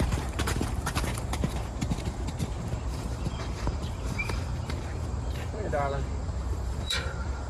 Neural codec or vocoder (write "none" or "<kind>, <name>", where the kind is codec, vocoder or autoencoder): vocoder, BigVGAN v2